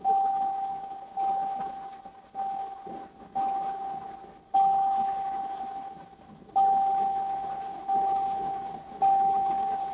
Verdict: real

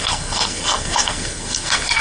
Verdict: fake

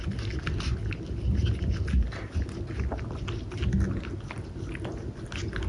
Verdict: real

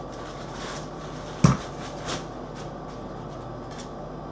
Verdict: real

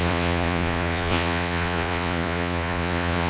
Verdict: fake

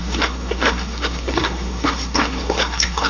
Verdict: fake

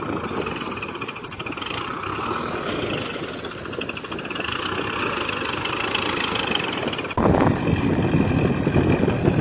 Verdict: real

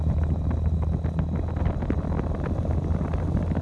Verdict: real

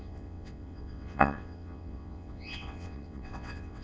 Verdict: fake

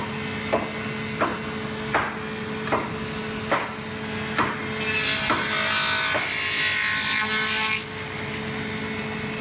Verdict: real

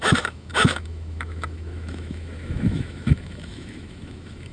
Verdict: fake